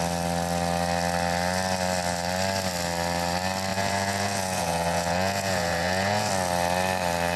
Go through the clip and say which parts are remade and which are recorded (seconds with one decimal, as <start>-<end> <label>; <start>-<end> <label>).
0.0-3.7 recorded; 3.7-6.3 remade; 6.3-7.4 recorded